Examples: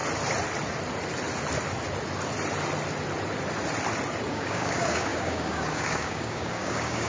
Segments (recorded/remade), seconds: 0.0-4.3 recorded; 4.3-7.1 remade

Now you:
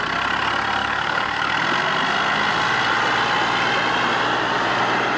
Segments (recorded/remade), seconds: 0.0-0.8 recorded; 0.8-1.5 remade; 1.5-5.2 recorded

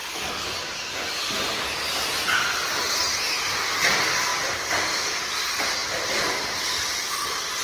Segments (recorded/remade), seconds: 0.0-0.6 remade; 0.6-7.6 recorded

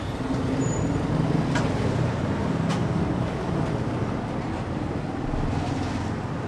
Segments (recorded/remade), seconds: 0.0-2.8 recorded; 2.8-3.5 remade; 3.5-6.5 recorded